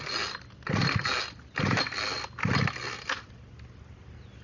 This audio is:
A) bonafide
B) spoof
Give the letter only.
A